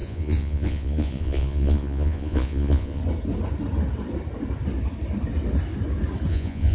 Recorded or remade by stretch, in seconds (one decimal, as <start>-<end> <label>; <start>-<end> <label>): 0.0-3.0 remade; 3.0-6.3 recorded; 6.3-6.7 remade